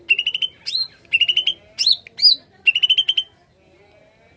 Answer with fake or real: real